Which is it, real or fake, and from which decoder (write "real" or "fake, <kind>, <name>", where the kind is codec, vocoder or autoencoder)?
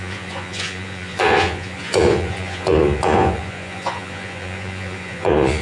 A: fake, vocoder, Vocos